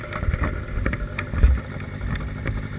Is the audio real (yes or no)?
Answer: yes